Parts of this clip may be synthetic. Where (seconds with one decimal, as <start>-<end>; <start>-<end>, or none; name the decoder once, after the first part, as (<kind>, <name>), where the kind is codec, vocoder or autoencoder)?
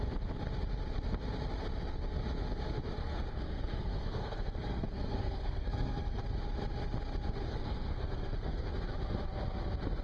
3.0-6.2 (codec, SNAC); 7.5-8.7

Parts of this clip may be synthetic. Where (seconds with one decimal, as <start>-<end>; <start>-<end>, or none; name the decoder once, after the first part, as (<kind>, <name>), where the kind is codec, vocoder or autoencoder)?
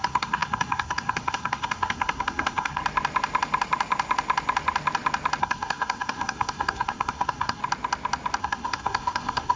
0.0-2.8 (codec, SNAC); 5.4-7.6; 8.4-9.6